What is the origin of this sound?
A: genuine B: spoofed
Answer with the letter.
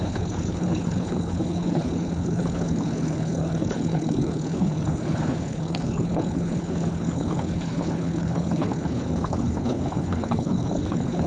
B